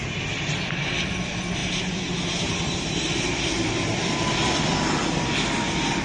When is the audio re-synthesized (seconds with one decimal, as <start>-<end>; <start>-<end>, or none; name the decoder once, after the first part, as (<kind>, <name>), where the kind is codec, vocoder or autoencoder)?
1.6-3.5 (vocoder, BigVGAN v2)